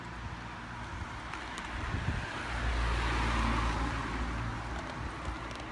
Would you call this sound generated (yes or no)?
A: no